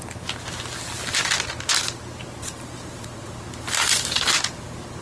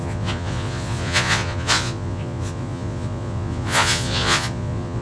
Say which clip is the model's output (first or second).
second